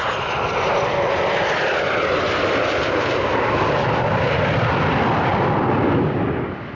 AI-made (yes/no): no